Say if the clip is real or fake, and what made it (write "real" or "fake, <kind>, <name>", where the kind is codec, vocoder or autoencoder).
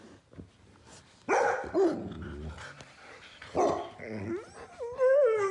real